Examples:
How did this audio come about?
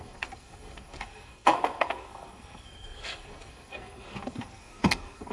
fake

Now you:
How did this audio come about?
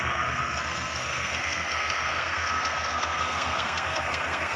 fake